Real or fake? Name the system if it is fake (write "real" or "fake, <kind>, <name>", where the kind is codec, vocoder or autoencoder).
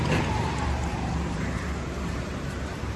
fake, vocoder, BigVGAN v2